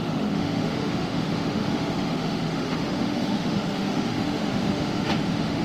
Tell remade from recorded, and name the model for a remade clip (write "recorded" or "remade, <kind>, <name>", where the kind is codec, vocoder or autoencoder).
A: remade, autoencoder, DAC-VAE